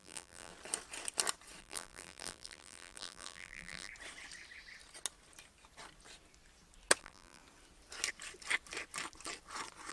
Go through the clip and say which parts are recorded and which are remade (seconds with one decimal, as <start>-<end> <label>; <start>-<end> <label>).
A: 0.0-0.5 remade; 0.5-1.6 recorded; 1.6-3.9 remade; 3.9-7.0 recorded; 7.0-7.4 remade; 7.4-9.9 recorded